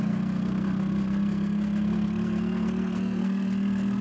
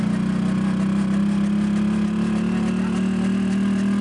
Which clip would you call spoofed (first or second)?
first